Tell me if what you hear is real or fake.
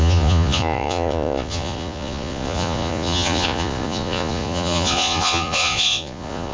fake